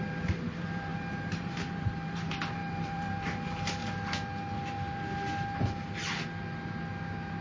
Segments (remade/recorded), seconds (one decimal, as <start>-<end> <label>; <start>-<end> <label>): 0.0-3.8 remade; 3.8-7.4 recorded